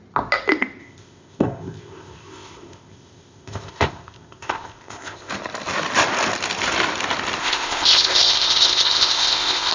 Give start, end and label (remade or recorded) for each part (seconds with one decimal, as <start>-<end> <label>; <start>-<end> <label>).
0.0-0.8 recorded; 0.8-5.3 remade; 5.3-7.4 recorded; 7.4-9.7 remade